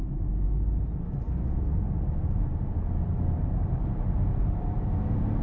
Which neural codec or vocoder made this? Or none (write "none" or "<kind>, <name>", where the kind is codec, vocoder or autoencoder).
none